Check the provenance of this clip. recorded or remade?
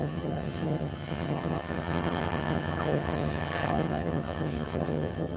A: remade